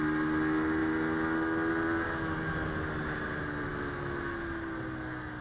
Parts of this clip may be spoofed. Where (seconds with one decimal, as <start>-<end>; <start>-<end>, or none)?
none